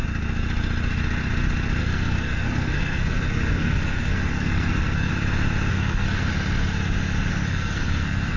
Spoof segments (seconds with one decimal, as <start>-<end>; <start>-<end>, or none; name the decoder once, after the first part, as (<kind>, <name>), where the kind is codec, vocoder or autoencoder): 1.8-5.1 (codec, SNAC); 5.7-6.3; 7.3-8.4